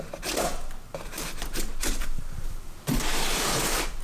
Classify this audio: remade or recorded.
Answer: recorded